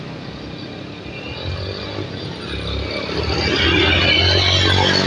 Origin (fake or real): real